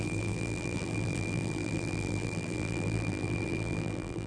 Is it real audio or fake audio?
fake